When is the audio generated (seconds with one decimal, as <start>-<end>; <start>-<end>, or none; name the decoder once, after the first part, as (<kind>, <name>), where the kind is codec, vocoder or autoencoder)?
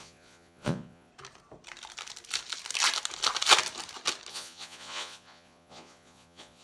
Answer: 0.0-1.1 (vocoder, Vocos); 4.3-6.6